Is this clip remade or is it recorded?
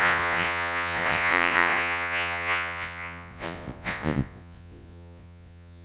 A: remade